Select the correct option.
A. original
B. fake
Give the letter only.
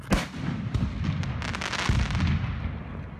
A